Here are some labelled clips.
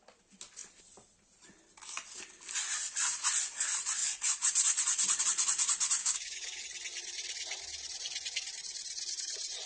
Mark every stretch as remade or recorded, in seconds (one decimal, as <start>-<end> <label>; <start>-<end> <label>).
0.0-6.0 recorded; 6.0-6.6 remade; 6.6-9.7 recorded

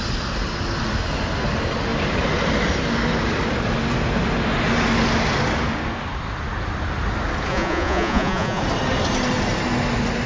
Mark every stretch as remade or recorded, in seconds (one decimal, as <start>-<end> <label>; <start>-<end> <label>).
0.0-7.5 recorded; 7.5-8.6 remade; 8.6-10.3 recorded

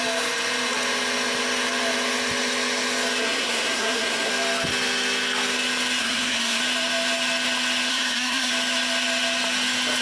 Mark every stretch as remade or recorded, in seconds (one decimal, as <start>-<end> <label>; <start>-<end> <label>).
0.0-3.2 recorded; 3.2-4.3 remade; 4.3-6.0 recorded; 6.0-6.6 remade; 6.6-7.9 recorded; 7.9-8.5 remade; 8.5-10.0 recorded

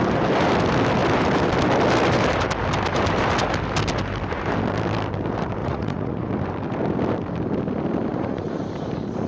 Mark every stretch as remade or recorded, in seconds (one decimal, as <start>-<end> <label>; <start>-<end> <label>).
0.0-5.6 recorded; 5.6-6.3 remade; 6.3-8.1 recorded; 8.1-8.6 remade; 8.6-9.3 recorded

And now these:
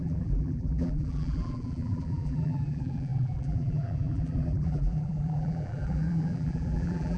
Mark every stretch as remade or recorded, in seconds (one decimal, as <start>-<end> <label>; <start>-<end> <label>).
0.0-7.2 remade

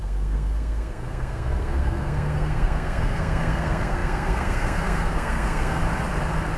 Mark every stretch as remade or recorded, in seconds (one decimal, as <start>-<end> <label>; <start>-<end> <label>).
0.0-5.8 remade; 5.8-6.6 recorded

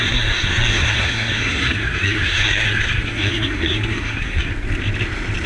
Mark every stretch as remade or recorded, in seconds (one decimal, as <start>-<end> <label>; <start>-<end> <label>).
0.0-4.5 remade; 4.5-5.5 recorded

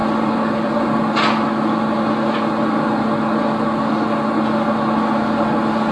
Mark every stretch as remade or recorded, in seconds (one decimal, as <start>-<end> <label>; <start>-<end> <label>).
0.0-1.1 remade; 1.1-5.9 recorded